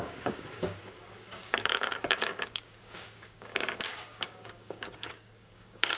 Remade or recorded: remade